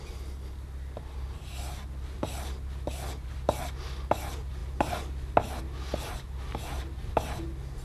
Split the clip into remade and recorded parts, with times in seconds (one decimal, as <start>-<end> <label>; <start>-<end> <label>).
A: 0.0-7.8 recorded